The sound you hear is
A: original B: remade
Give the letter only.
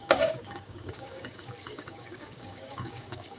B